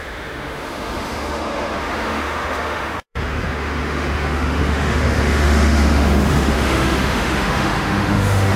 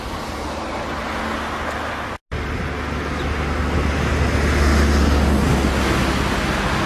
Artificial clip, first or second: first